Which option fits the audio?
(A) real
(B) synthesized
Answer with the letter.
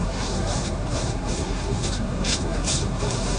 B